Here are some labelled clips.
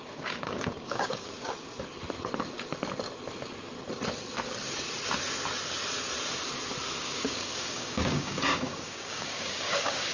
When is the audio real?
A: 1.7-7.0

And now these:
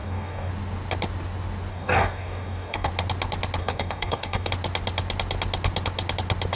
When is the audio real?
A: 0.5-1.7; 2.9-3.6; 4.5-6.6

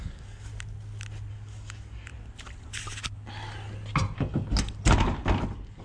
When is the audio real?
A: 0.5-1.3; 2.1-5.8

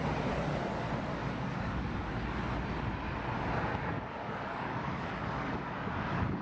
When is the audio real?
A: 0.0-1.2; 2.4-3.7

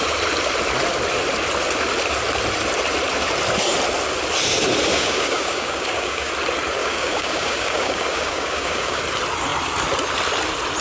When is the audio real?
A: 0.0-4.9; 6.3-6.8; 9.0-10.8

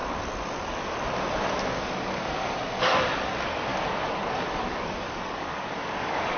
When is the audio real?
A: 0.0-1.7; 3.7-4.8